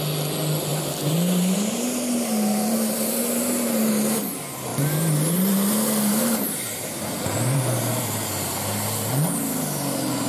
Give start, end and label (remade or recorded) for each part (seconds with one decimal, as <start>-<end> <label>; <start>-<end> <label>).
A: 0.0-0.7 recorded; 0.7-3.9 remade; 3.9-4.7 recorded; 4.7-9.1 remade; 9.1-10.3 recorded

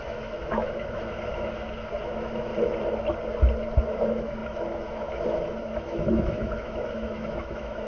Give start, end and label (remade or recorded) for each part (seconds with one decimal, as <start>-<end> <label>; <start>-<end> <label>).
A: 0.0-2.5 remade; 2.5-3.8 recorded; 3.8-7.9 remade

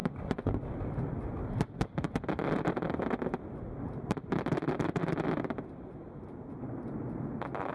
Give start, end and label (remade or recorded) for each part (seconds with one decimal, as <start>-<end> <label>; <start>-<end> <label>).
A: 0.0-0.6 remade; 0.6-7.7 recorded